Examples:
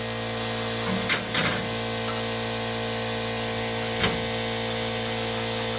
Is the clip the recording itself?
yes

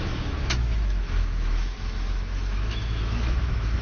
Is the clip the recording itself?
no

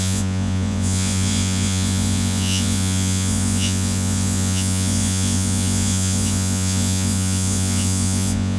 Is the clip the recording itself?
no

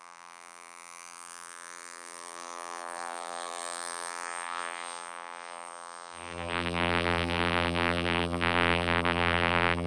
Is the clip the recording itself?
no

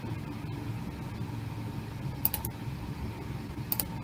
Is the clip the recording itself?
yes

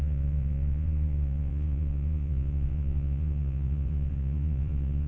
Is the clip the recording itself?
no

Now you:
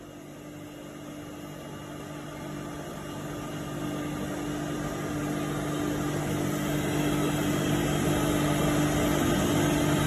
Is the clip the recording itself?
yes